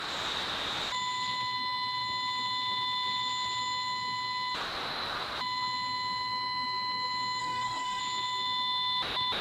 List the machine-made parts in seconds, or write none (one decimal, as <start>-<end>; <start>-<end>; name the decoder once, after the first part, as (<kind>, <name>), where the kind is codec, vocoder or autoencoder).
7.4-8.0 (codec, DAC)